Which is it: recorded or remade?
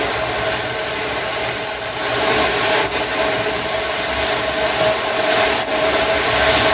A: recorded